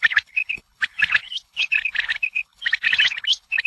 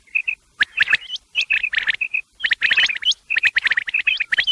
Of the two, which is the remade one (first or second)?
first